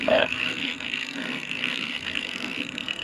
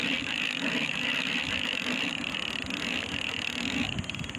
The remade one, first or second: first